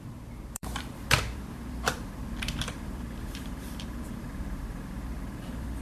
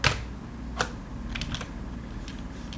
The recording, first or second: second